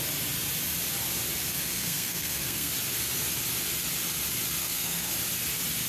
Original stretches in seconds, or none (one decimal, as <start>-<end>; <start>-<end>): 0.0-1.5; 2.7-4.6; 5.1-5.9